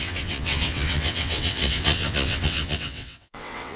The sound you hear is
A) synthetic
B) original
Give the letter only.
A